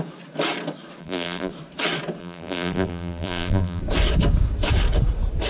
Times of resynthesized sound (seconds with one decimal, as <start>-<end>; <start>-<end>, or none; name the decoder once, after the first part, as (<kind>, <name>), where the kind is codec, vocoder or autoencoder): 1.0-1.5 (vocoder, BigVGAN v2); 2.2-3.8